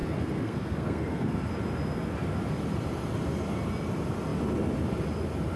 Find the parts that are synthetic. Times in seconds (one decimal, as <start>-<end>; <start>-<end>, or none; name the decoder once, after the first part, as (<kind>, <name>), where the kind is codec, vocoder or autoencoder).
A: 0.0-1.5 (codec, SNAC)